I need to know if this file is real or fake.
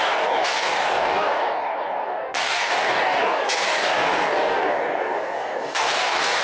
fake